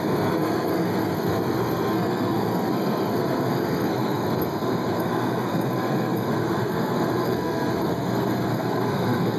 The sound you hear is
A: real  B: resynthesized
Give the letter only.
B